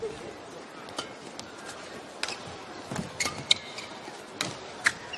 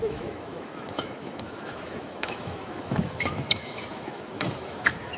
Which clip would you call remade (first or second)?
second